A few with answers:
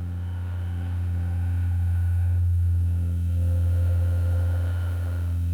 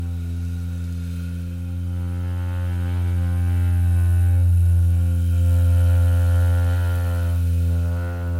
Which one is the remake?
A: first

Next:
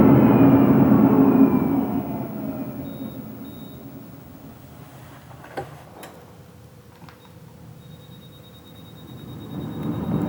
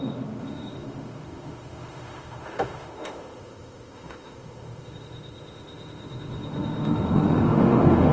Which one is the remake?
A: second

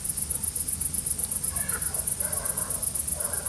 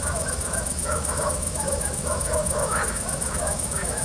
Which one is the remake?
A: second